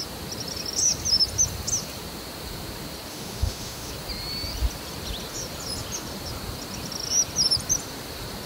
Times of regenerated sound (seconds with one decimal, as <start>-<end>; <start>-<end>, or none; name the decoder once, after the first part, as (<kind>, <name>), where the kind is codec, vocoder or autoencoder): 3.1-3.9 (autoencoder, DAC-VAE)